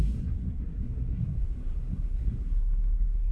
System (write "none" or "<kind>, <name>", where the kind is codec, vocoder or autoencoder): codec, SNAC